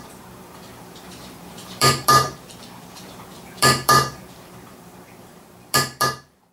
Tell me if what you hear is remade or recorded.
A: remade